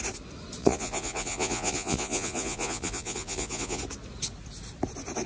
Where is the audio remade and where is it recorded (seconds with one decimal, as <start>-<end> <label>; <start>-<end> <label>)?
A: 0.0-0.6 recorded; 0.6-3.8 remade; 3.8-5.3 recorded